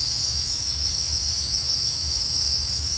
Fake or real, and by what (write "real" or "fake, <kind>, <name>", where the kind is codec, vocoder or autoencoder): fake, autoencoder, DAC-VAE